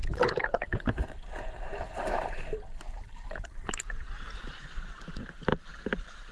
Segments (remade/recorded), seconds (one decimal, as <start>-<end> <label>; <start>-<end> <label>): 0.0-6.3 remade